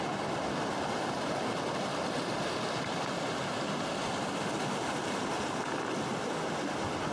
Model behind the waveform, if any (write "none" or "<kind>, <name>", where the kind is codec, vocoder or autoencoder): none